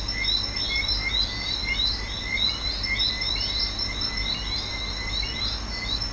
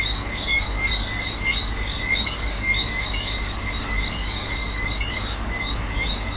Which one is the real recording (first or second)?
first